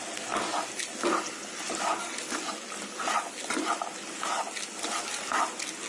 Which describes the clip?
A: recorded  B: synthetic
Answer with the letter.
A